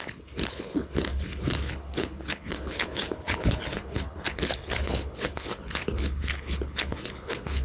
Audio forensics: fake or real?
fake